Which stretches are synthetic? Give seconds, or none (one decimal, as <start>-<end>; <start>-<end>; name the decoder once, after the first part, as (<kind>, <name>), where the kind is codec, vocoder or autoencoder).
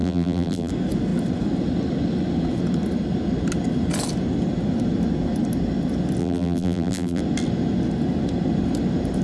0.0-0.7 (vocoder, BigVGAN v2); 6.2-7.2